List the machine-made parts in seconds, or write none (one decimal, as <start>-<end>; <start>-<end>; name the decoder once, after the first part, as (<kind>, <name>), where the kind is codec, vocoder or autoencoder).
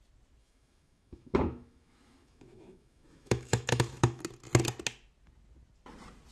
0.4-4.2 (autoencoder, DAC-VAE)